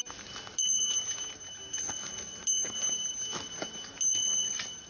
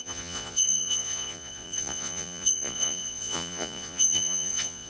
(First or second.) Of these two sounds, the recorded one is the first